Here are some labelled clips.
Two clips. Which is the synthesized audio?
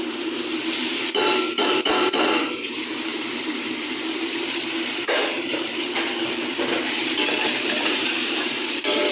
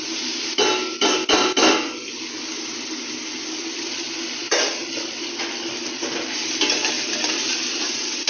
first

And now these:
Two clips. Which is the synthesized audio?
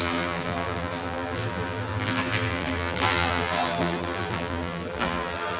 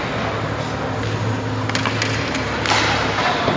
first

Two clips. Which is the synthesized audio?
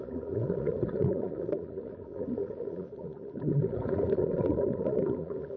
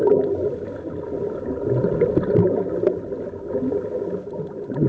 first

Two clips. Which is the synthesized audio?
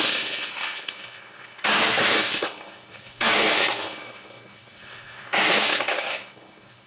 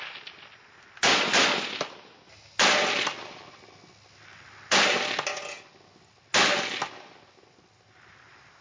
first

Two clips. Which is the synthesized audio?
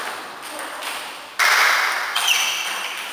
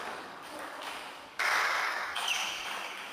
second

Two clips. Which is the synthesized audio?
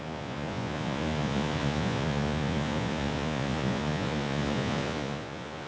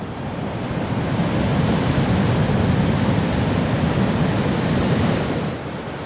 first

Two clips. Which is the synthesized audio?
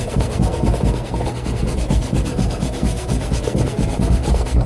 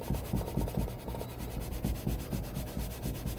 first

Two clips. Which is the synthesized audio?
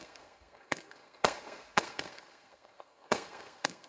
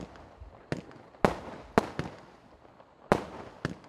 first